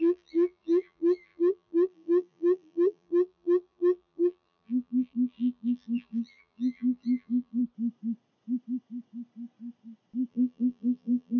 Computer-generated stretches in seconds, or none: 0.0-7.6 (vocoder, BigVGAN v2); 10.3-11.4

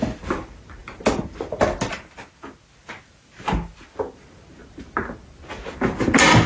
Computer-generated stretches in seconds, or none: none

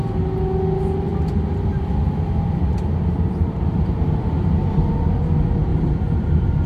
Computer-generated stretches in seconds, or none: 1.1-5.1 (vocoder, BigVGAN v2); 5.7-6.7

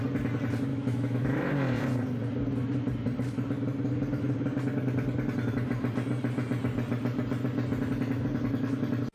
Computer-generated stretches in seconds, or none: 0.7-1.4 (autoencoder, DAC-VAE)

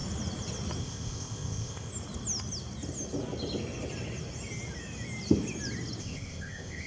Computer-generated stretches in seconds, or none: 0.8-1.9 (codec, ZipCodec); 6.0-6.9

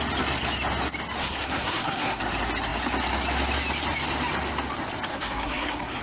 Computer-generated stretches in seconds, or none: 1.2-2.2 (codec, SNAC); 5.1-6.0

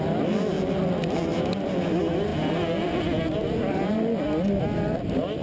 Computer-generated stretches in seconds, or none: none

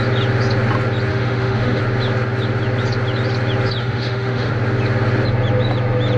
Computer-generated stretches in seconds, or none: 1.1-1.8 (autoencoder, DAC-VAE); 3.8-4.5